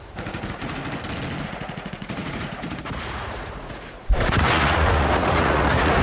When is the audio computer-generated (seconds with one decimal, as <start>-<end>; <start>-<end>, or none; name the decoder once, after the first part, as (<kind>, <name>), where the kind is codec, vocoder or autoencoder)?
0.0-0.8 (vocoder, Vocos); 1.4-6.0